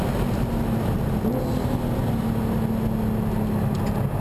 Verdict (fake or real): real